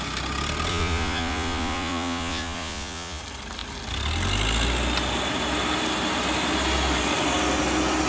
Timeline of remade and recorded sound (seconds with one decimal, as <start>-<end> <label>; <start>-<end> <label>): 0.0-0.7 recorded; 0.7-3.2 remade; 3.2-8.1 recorded